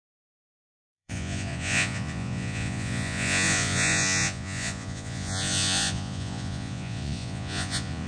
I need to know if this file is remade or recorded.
remade